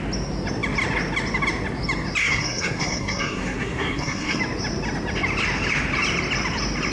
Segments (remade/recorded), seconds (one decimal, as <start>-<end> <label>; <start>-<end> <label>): 0.0-2.2 recorded; 2.2-4.4 remade; 4.4-6.9 recorded